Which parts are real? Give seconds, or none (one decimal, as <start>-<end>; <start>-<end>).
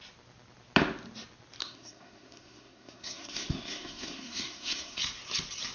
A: 0.0-1.6; 5.0-5.7